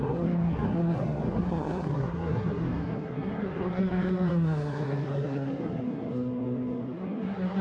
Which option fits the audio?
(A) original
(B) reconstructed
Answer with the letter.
B